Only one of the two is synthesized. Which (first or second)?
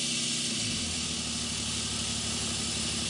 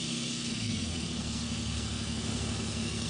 second